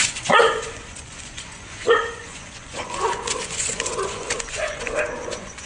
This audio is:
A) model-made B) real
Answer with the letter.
A